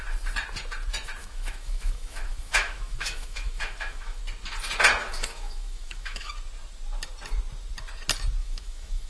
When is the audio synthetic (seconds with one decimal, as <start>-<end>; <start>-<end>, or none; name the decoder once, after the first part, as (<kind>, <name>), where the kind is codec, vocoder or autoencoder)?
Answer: 1.2-4.2 (autoencoder, DAC-VAE); 5.0-6.3; 8.4-9.1

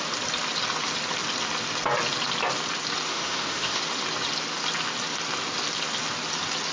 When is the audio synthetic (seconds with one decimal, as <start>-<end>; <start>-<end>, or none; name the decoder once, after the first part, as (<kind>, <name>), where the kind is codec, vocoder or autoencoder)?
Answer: 3.1-3.8 (autoencoder, DAC-VAE)

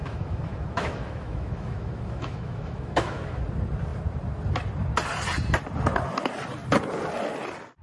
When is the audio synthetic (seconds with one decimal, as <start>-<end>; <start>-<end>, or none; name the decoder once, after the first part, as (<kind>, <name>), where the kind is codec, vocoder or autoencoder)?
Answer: 0.0-3.4 (autoencoder, DAC-VAE)

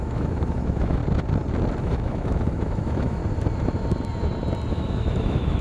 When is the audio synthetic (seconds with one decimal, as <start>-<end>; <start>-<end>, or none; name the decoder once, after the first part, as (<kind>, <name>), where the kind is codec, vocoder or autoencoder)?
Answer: 0.0-1.0 (autoencoder, DAC-VAE); 1.8-3.2; 4.7-5.6

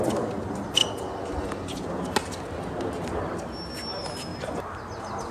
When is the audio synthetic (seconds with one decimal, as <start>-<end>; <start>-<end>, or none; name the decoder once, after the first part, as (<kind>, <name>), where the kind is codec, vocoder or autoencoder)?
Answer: none

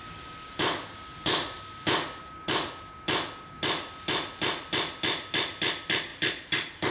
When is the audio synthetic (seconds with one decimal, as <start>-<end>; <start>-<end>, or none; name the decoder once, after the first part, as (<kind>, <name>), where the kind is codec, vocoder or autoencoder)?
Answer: none

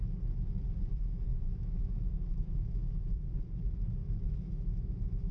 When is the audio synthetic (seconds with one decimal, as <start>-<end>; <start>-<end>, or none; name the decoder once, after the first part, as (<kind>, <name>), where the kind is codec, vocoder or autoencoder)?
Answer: 1.3-3.1 (autoencoder, DAC-VAE); 4.0-5.3